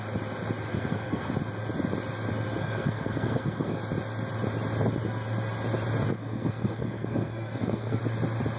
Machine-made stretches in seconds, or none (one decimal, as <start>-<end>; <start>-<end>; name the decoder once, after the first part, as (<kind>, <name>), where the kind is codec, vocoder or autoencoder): 0.7-1.3 (codec, SNAC); 2.6-3.8; 6.1-8.0